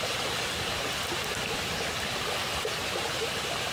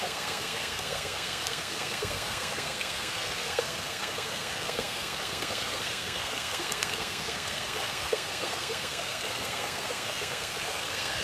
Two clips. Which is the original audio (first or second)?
first